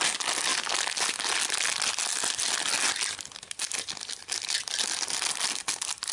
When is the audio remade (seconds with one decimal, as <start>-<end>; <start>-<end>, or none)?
none